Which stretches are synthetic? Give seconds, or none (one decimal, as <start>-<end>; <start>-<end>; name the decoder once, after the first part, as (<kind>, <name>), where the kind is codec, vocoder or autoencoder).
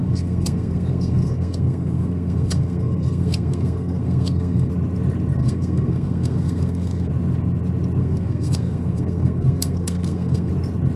0.0-4.7 (codec, SNAC); 5.4-7.1; 8.0-10.5